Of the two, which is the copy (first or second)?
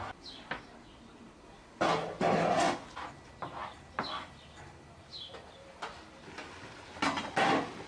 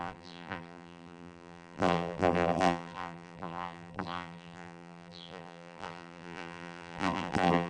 second